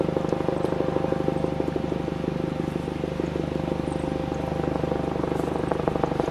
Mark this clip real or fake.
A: real